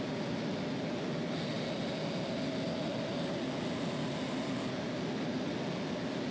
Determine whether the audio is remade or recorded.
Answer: recorded